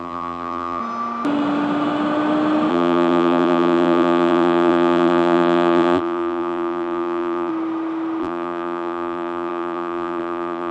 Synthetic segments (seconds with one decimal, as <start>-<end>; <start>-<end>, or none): 0.0-0.8; 2.7-7.5; 8.2-10.7